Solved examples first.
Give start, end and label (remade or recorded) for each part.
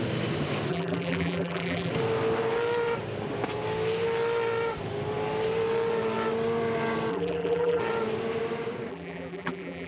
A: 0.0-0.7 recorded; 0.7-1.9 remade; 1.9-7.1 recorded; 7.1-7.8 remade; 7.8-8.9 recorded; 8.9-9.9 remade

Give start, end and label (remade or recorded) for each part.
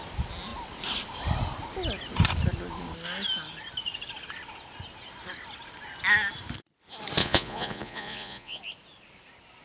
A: 0.0-7.2 recorded; 7.2-8.6 remade; 8.6-9.6 recorded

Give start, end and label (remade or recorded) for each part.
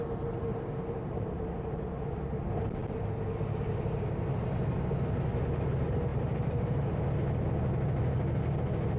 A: 0.0-0.5 recorded; 0.5-1.4 remade; 1.4-6.1 recorded; 6.1-6.9 remade; 6.9-9.0 recorded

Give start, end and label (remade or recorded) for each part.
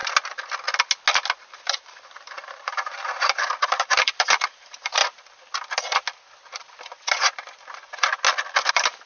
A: 0.0-1.5 recorded; 1.5-5.0 remade; 5.0-8.7 recorded; 8.7-9.1 remade